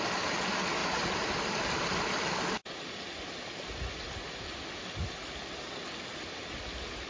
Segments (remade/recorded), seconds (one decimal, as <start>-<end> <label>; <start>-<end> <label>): 0.0-7.1 recorded